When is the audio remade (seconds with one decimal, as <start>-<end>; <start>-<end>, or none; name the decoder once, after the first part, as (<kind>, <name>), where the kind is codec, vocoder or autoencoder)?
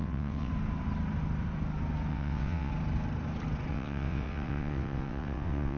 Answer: 0.0-0.5 (vocoder, WaveNeXt); 2.1-2.7; 3.7-5.8